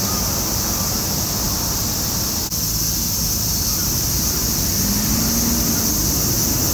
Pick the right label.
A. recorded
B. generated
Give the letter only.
A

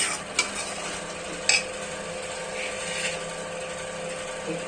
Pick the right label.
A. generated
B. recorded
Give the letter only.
B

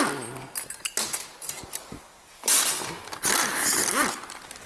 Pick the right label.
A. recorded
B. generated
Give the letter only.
A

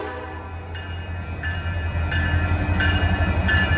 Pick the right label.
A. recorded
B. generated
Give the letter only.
A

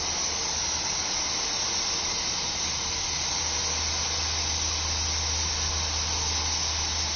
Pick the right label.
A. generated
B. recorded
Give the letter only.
B